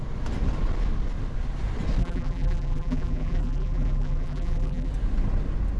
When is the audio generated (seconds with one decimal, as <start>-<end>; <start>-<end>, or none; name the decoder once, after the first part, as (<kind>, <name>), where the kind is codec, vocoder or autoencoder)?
2.0-4.9 (vocoder, BigVGAN v2)